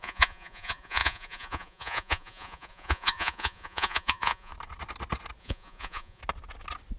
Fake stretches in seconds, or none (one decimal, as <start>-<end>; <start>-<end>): 0.0-4.5; 5.4-6.2